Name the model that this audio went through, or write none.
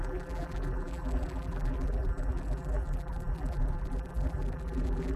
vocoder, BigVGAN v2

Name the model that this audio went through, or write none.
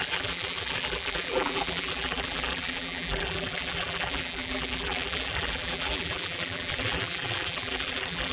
vocoder, BigVGAN v2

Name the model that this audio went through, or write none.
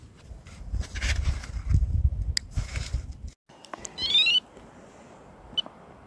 none